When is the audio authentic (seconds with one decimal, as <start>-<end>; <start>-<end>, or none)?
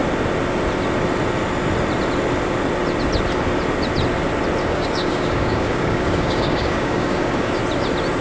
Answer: 0.0-4.6; 7.5-8.2